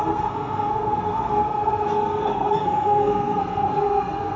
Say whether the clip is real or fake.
fake